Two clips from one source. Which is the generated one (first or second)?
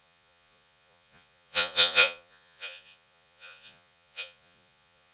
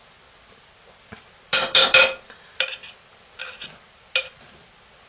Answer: first